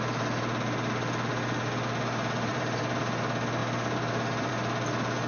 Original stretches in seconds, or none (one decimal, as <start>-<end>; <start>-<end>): 0.0-2.5; 3.0-3.6; 4.5-5.3